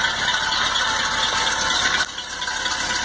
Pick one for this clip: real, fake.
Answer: real